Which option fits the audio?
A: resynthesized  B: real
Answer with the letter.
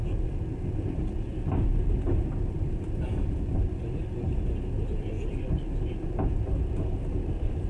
B